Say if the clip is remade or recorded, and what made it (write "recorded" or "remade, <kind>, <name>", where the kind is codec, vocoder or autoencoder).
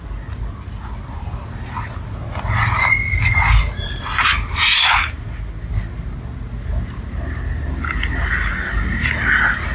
recorded